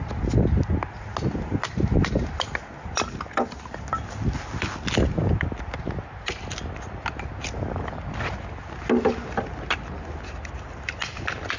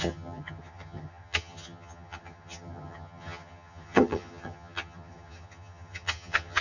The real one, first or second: first